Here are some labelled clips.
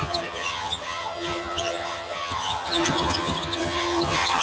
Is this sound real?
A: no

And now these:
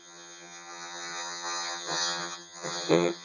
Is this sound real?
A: no